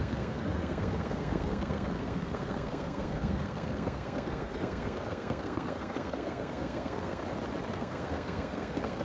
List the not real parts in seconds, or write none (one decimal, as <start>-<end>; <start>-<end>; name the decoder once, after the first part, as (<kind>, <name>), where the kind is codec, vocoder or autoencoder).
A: 0.0-7.2 (codec, SNAC); 7.7-9.0